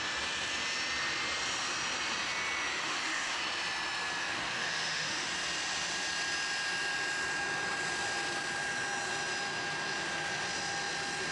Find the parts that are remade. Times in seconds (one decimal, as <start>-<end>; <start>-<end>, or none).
2.7-3.4; 4.2-5.3